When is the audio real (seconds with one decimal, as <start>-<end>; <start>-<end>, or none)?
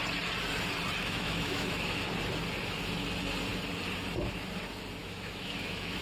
0.0-1.0; 2.1-5.0